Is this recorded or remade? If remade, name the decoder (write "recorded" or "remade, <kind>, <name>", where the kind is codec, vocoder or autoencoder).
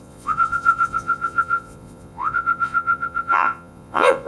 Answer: remade, vocoder, Vocos